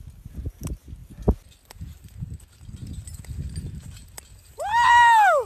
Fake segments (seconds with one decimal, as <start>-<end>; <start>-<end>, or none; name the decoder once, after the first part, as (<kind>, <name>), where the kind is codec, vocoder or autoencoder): none